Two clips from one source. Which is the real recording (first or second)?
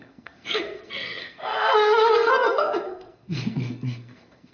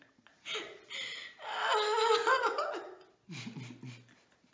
second